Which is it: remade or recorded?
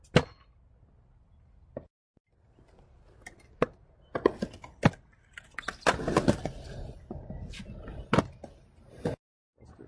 recorded